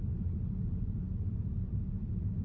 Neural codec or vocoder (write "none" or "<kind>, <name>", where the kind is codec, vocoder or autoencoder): none